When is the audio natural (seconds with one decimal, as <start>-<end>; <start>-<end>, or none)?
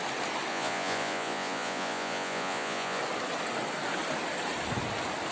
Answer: 0.0-0.5; 3.0-5.3